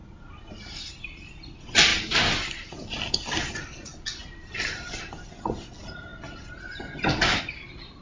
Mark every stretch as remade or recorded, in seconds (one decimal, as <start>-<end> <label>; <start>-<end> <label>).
0.0-1.3 remade; 1.3-1.9 recorded; 1.9-3.5 remade; 3.5-4.2 recorded; 4.2-5.3 remade; 5.3-8.0 recorded